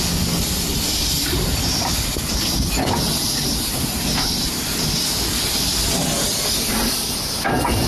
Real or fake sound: real